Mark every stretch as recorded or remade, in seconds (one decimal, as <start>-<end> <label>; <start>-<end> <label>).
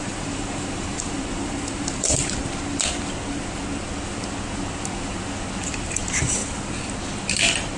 0.0-2.4 remade; 2.4-5.6 recorded; 5.6-6.4 remade; 6.4-7.8 recorded